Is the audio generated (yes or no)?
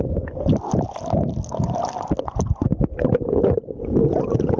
no